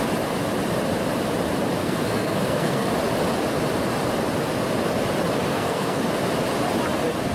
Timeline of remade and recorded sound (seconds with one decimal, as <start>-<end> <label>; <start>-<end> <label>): 0.0-1.8 recorded; 1.8-2.9 remade; 2.9-5.5 recorded; 5.5-6.0 remade; 6.0-7.3 recorded